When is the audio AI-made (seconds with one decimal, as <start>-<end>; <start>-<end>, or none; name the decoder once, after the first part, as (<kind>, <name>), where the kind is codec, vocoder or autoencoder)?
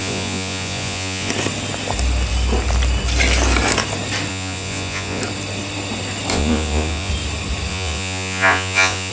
0.0-1.3 (vocoder, Vocos); 4.3-5.2; 6.3-7.1; 7.7-9.1